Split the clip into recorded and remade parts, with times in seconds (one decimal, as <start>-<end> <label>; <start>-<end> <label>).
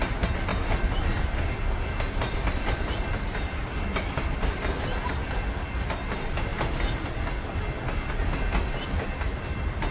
0.0-0.5 recorded; 0.5-5.7 remade; 5.7-9.9 recorded